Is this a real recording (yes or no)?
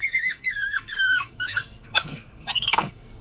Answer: no